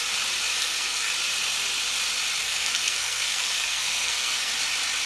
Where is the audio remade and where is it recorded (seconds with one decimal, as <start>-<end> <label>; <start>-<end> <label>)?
0.0-0.5 recorded; 0.5-1.1 remade; 1.1-2.4 recorded; 2.4-4.5 remade; 4.5-5.1 recorded